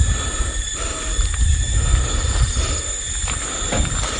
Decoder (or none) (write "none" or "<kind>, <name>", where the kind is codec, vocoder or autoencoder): none